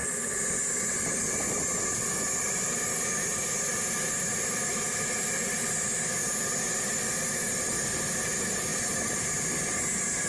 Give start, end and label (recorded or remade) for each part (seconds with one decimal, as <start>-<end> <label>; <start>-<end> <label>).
0.0-10.3 recorded